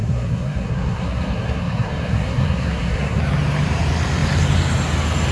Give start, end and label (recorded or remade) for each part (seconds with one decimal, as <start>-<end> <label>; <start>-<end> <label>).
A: 0.0-3.2 remade; 3.2-5.3 recorded